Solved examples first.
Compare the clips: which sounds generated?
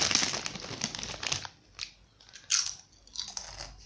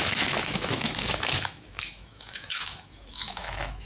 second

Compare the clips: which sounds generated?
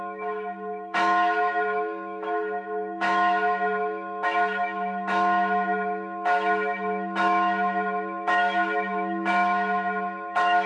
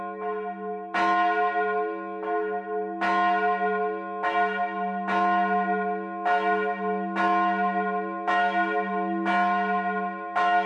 first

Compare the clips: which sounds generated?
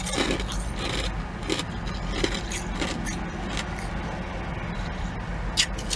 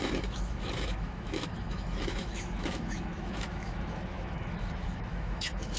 second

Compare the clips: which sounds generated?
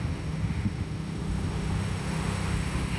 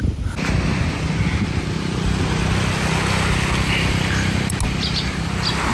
first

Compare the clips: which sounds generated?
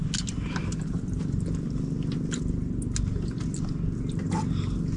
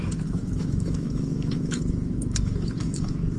second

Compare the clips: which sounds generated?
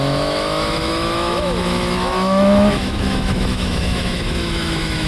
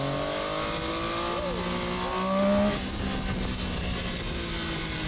first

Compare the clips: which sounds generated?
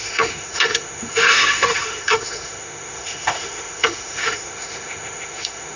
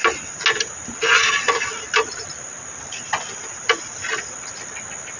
first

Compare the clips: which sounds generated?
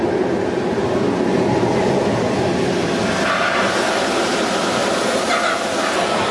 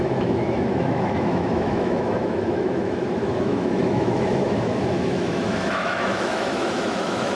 second